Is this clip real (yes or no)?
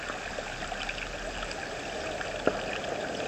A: yes